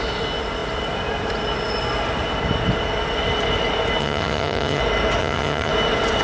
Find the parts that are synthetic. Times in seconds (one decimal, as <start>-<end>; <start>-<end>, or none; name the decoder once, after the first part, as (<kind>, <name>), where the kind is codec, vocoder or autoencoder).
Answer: 4.0-4.8 (vocoder, HiFi-GAN); 5.2-5.7